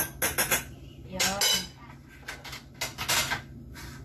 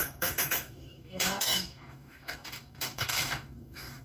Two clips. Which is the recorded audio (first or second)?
first